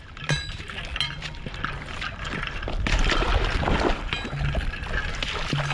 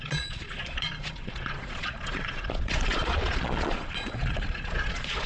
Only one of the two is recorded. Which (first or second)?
first